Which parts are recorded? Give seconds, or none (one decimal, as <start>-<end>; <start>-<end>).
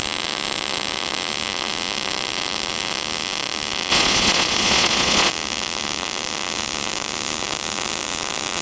0.0-3.9; 5.3-8.6